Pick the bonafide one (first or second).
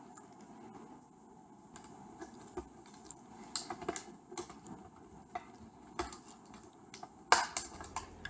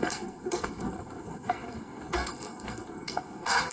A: first